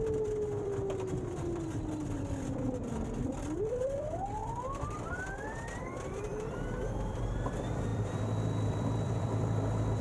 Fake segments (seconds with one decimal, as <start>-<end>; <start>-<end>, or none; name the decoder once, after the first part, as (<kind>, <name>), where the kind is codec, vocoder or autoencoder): 0.0-10.0 (vocoder, BigVGAN v2)